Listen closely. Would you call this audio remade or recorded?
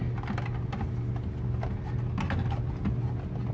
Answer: recorded